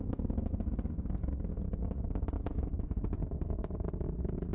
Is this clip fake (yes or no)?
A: no